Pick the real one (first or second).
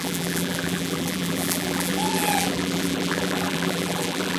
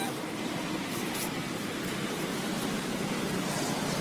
second